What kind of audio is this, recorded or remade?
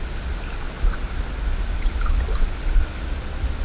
recorded